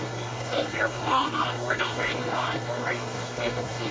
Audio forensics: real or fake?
fake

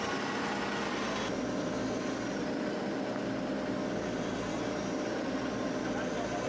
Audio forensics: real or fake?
real